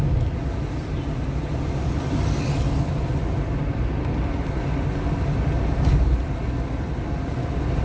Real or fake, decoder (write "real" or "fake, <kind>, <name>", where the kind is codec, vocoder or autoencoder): real